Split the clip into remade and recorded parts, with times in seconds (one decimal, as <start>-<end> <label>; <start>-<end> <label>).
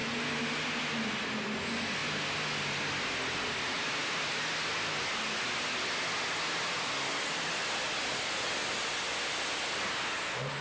0.0-10.6 recorded